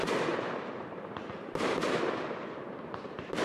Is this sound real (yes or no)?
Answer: no